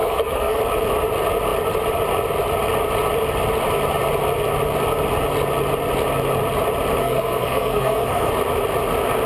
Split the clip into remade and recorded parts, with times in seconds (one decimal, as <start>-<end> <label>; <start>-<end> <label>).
0.0-0.6 remade; 0.6-7.0 recorded; 7.0-8.3 remade; 8.3-9.3 recorded